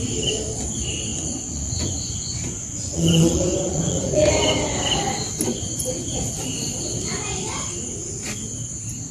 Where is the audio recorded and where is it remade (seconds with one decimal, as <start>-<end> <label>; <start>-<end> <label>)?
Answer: 0.0-1.1 recorded; 1.1-4.3 remade; 4.3-9.1 recorded